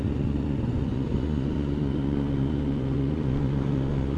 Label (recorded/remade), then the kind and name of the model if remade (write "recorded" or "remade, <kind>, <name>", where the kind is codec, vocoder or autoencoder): remade, vocoder, Vocos